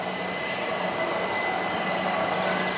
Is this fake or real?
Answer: real